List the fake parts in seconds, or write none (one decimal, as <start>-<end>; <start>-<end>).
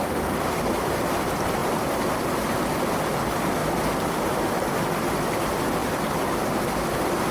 none